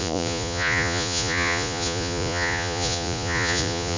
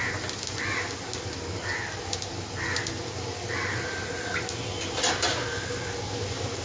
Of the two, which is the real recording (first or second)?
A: second